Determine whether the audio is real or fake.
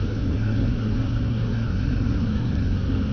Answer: fake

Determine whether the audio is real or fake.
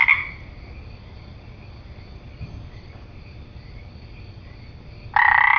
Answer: real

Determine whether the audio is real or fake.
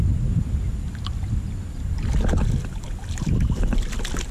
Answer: real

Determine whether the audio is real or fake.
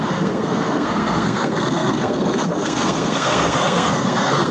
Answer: fake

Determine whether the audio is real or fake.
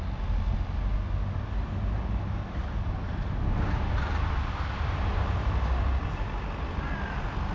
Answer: real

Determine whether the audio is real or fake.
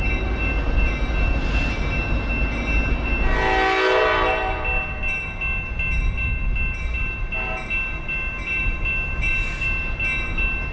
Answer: real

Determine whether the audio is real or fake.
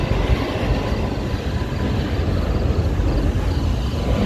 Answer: real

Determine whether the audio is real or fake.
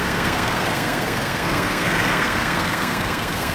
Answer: fake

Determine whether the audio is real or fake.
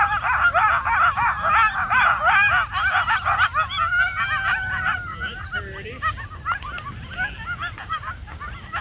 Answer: real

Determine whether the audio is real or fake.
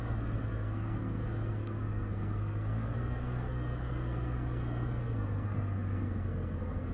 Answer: fake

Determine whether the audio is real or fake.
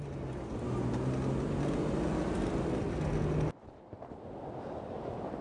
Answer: real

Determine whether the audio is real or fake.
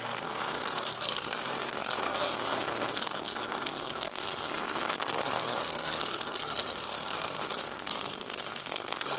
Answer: fake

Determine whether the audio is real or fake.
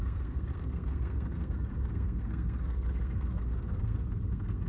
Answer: fake